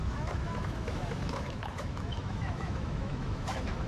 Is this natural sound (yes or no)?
no